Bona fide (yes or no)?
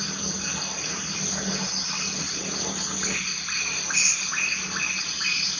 yes